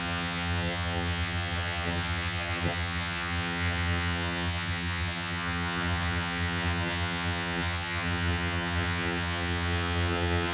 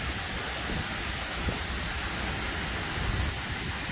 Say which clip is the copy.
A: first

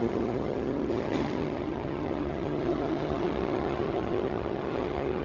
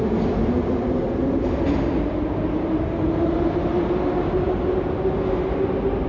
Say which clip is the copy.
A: first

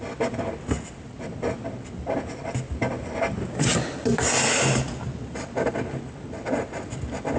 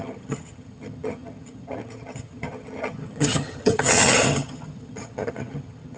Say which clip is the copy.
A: second